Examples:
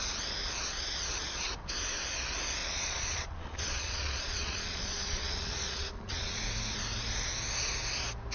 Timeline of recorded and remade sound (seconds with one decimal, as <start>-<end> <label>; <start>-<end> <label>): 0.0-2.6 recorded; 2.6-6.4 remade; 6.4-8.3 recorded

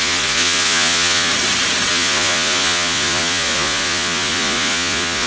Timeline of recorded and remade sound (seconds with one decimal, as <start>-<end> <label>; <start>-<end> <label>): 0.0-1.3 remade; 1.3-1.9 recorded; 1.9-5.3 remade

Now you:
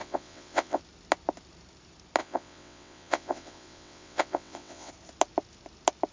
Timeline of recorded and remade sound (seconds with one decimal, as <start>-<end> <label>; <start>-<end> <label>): 0.0-0.8 remade; 0.8-2.2 recorded; 2.2-4.9 remade; 4.9-6.1 recorded

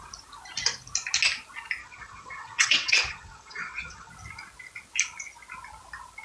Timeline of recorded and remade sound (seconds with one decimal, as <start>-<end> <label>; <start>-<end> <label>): 0.0-1.8 recorded; 1.8-4.1 remade; 4.1-6.2 recorded

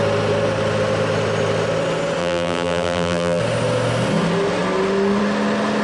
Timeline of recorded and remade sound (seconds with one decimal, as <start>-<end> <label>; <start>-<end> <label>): 0.0-2.2 recorded; 2.2-3.4 remade; 3.4-5.8 recorded

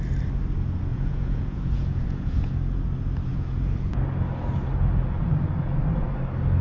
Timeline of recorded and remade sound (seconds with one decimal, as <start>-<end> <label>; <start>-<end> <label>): 0.0-0.9 recorded; 0.9-2.5 remade; 2.5-3.3 recorded; 3.3-3.9 remade; 3.9-6.6 recorded

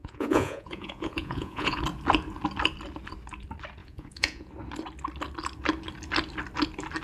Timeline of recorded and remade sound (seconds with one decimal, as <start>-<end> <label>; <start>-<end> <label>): 0.0-1.8 remade; 1.8-3.8 recorded; 3.8-4.5 remade; 4.5-7.0 recorded